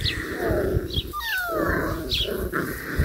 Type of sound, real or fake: real